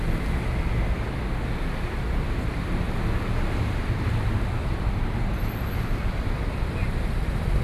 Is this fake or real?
fake